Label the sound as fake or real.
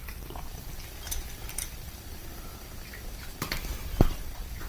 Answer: fake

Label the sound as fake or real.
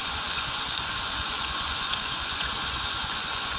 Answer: fake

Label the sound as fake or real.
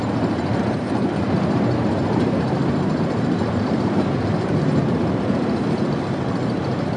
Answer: fake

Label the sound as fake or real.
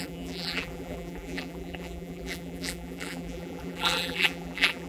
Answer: fake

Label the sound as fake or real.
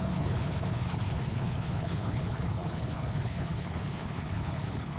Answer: fake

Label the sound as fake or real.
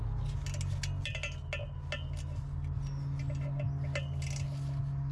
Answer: real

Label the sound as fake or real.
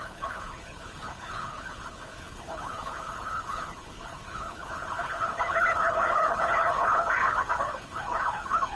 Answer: fake